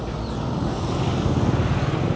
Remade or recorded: recorded